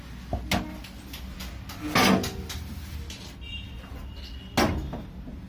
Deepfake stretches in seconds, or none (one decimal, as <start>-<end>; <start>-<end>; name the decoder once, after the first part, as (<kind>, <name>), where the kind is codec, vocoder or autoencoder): none